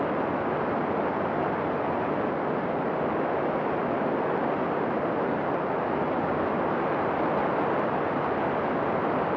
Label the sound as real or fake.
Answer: real